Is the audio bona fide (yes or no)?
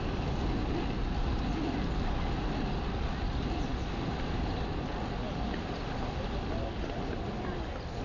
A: yes